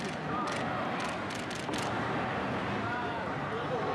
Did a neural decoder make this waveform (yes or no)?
no